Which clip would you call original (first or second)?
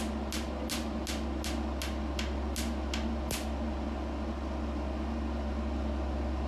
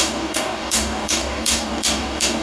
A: first